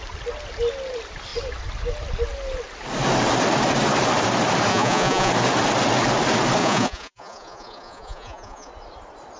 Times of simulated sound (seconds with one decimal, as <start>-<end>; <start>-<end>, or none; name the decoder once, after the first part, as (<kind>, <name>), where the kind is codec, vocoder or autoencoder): 4.7-5.3 (vocoder, Vocos); 6.6-8.7